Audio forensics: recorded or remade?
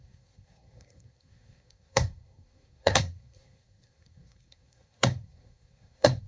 remade